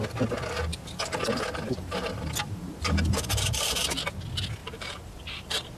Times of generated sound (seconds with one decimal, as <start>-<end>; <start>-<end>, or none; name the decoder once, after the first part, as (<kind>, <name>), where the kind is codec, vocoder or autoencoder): 0.7-3.9 (vocoder, BigVGAN v2); 4.6-5.8